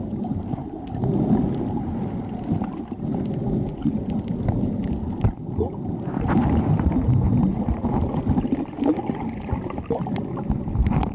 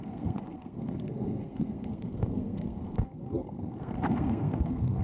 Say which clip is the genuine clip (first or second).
first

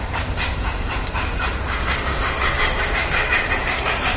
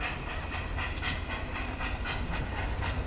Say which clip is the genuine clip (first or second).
second